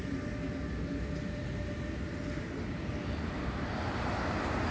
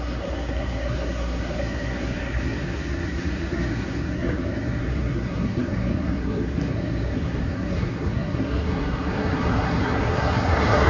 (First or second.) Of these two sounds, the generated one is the second